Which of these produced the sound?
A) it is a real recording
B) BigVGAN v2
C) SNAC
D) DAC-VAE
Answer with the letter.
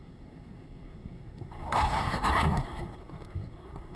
C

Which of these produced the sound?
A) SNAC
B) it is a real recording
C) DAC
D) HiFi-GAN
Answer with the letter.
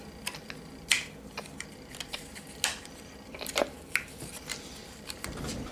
B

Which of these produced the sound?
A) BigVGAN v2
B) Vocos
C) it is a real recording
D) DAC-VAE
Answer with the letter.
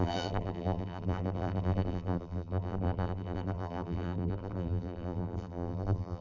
A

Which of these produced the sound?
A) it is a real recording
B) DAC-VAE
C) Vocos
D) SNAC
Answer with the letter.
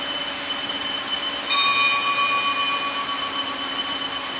A